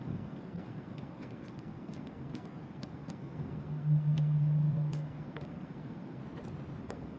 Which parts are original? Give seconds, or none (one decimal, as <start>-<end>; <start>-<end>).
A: 6.2-6.8